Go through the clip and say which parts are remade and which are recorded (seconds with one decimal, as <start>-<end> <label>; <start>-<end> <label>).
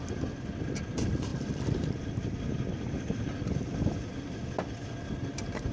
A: 0.0-5.7 recorded